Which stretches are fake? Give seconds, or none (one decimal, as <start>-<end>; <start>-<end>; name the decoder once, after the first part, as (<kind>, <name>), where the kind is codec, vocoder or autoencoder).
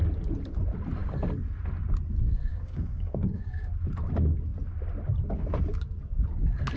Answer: 2.5-3.7 (codec, DAC)